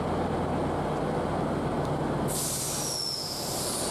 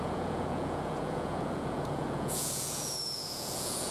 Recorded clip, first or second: first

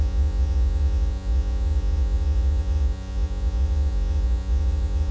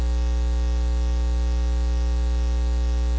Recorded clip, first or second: second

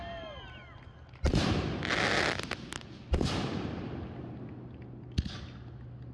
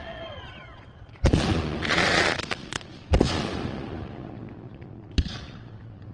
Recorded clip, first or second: first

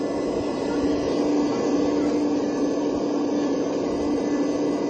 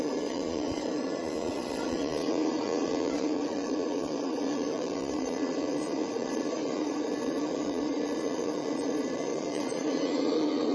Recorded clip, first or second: first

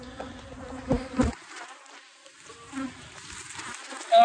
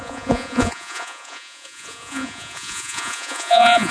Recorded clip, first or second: first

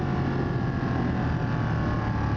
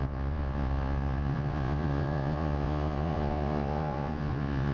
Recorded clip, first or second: first